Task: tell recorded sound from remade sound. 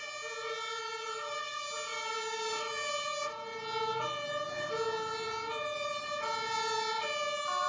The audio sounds recorded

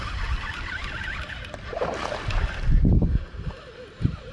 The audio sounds recorded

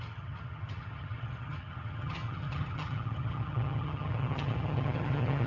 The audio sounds remade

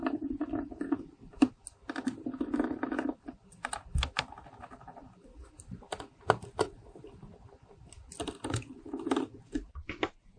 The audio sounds recorded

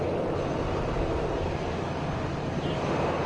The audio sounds recorded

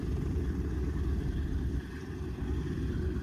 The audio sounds recorded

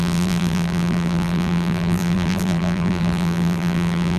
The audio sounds remade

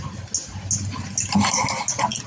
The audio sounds recorded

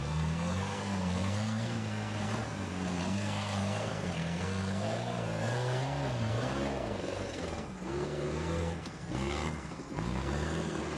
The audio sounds remade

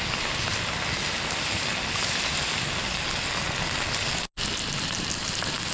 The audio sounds recorded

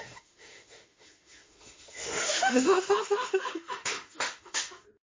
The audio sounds remade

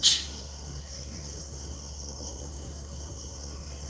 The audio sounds remade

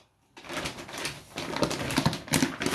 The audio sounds recorded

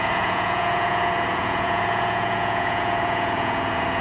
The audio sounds remade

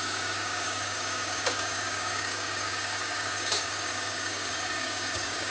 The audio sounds remade